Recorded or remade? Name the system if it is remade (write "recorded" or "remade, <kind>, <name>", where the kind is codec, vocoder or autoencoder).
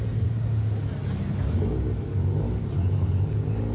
recorded